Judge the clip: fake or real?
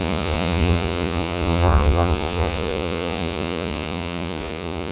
fake